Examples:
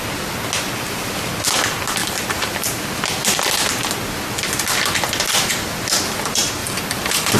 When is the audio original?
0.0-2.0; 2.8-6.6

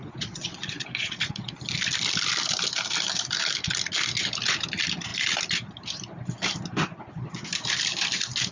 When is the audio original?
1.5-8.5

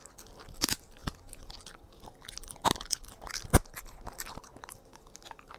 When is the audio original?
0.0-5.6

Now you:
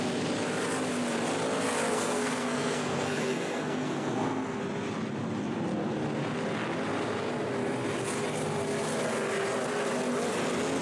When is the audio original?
0.0-1.9; 4.6-10.8